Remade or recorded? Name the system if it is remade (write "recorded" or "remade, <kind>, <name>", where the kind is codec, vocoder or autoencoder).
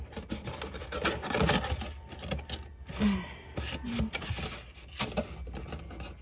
recorded